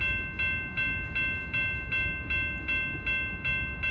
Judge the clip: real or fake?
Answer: real